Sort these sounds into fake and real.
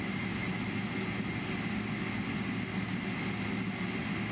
real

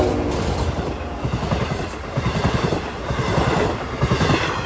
real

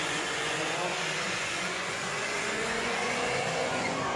fake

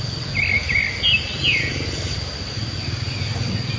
real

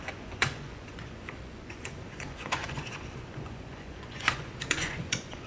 fake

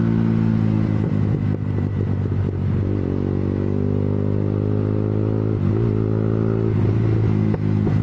real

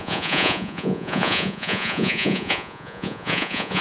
fake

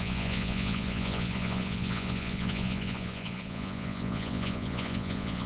fake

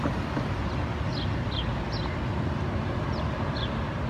real